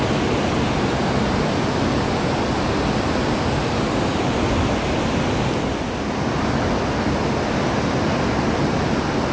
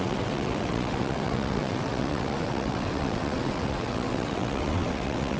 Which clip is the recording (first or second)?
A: first